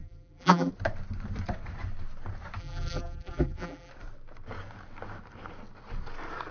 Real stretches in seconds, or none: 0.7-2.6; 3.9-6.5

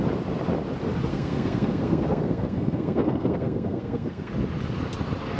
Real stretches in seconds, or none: 0.0-1.1; 4.3-5.4

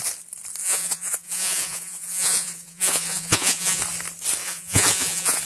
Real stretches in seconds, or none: 0.0-0.6; 3.8-4.4

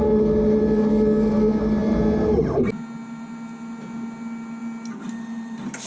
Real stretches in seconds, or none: 0.0-5.9